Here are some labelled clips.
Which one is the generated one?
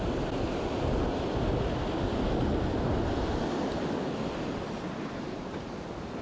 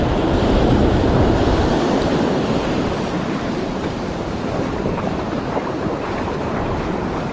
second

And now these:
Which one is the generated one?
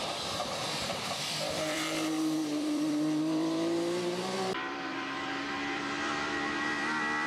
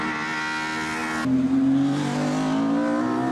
first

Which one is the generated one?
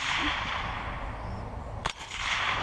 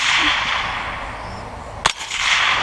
first